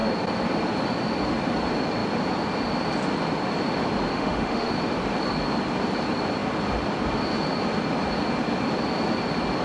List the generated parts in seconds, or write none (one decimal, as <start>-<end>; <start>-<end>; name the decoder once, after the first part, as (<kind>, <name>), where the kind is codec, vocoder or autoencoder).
4.1-4.7 (autoencoder, DAC-VAE)